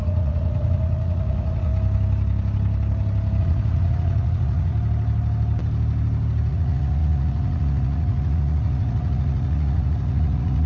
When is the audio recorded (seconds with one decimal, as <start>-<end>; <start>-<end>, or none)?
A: 1.7-3.4; 4.7-6.5